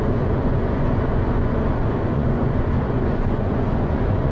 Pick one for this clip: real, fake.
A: fake